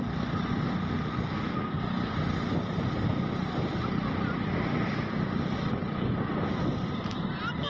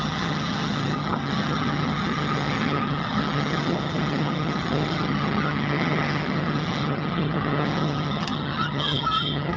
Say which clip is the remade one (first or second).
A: second